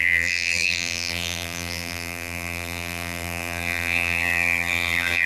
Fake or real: fake